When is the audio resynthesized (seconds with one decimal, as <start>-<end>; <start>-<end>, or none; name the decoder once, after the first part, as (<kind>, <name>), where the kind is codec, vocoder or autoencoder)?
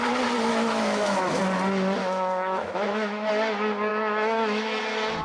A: 0.5-1.4 (autoencoder, DAC-VAE); 2.0-3.3; 3.9-4.8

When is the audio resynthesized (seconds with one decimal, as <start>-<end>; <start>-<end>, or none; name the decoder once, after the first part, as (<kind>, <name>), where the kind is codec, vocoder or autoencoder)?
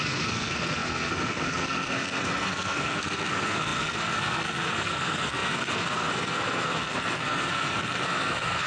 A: 0.0-8.7 (codec, SNAC)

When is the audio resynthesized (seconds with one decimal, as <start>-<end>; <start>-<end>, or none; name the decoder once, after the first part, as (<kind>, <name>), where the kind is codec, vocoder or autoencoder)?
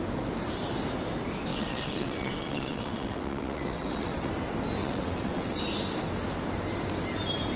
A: 1.5-4.3 (vocoder, WaveNeXt); 4.8-5.6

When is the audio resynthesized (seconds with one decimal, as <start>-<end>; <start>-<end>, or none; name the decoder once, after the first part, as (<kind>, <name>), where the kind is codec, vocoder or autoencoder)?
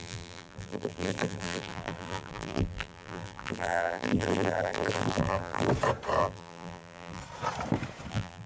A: 0.0-5.7 (vocoder, BigVGAN v2); 6.2-7.2; 8.1-8.5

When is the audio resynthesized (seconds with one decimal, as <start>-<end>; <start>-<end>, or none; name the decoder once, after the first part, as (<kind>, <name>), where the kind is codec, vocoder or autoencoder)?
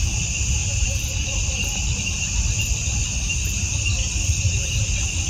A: none